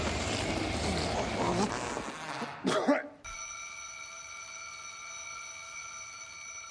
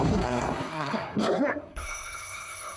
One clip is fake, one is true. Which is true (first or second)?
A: first